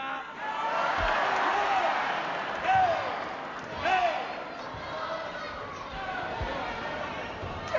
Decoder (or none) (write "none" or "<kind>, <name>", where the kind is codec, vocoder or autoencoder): none